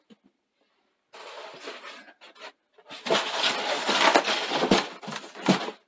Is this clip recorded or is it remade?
recorded